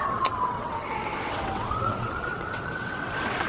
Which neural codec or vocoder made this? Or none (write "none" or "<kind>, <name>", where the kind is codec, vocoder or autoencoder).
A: vocoder, WaveNeXt